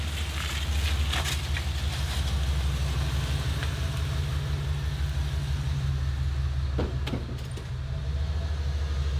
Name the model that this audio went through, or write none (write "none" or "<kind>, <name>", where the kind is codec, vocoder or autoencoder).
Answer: none